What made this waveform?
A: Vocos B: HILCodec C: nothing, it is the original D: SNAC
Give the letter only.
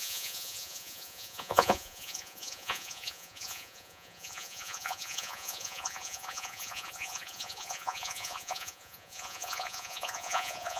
A